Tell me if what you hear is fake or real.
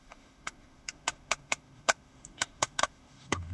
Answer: fake